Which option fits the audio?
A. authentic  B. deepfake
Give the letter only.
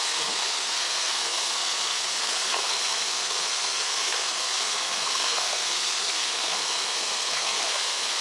B